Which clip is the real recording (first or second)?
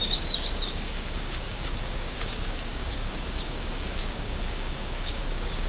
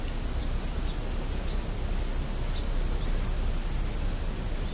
second